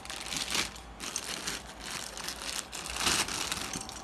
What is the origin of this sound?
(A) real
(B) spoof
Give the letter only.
A